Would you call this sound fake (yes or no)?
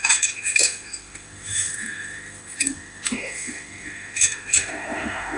yes